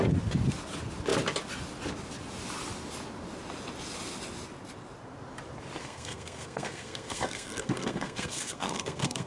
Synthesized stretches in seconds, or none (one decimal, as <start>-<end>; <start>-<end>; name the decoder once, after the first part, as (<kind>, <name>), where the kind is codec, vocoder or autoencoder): 5.8-9.3 (codec, SNAC)